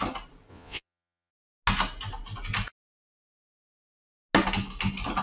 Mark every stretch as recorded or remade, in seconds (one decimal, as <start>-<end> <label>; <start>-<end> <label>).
0.0-0.5 recorded; 0.5-1.3 remade; 1.3-5.2 recorded